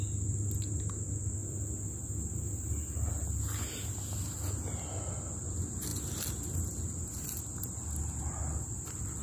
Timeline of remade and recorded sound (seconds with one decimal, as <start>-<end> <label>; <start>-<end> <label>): 0.0-9.2 recorded